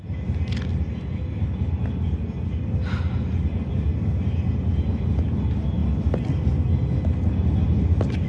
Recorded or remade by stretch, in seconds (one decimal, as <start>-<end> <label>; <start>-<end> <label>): 0.0-8.3 recorded